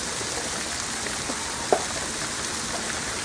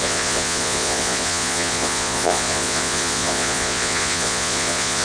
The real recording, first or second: first